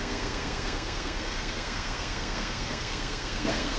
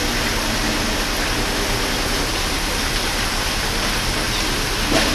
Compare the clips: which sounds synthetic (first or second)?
first